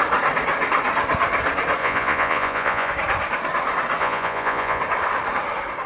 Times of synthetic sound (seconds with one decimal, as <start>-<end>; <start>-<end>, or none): 1.8-2.9; 4.0-4.8